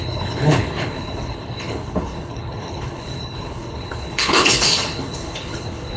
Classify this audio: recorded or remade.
remade